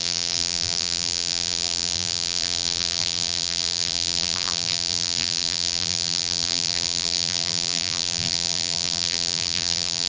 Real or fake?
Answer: fake